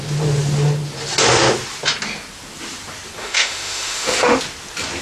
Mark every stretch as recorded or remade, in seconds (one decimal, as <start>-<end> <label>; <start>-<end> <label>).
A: 0.0-3.2 recorded; 3.2-4.4 remade; 4.4-5.0 recorded